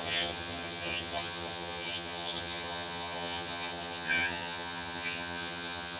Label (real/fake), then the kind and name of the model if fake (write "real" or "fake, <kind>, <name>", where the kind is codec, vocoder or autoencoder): fake, vocoder, HiFi-GAN